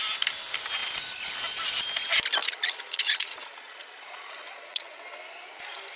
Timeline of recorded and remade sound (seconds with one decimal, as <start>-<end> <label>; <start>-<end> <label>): 0.0-2.4 recorded; 2.4-5.0 remade; 5.0-6.0 recorded